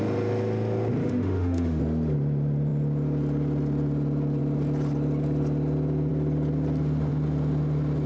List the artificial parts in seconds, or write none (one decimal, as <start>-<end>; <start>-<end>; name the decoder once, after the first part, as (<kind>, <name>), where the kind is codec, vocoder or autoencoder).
1.0-1.8 (autoencoder, DAC-VAE)